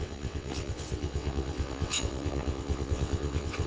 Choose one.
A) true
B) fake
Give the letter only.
B